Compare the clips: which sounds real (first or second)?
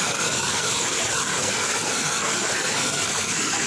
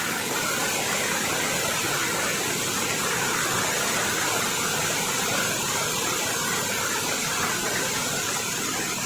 second